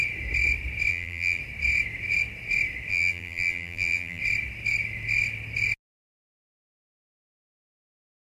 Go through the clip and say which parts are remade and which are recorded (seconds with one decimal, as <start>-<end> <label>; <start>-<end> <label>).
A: 0.0-0.9 recorded; 0.9-1.4 remade; 1.4-2.9 recorded; 2.9-4.2 remade; 4.2-8.2 recorded